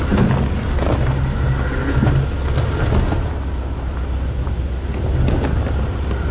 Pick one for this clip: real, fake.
real